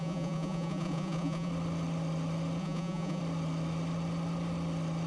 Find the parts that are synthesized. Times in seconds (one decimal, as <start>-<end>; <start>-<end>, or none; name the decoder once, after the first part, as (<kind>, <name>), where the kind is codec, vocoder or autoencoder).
0.0-1.5 (vocoder, Vocos); 2.6-3.2